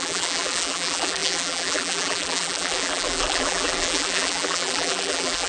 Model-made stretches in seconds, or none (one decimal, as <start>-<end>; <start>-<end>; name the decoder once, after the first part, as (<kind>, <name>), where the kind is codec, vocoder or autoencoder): 0.0-5.5 (vocoder, BigVGAN v2)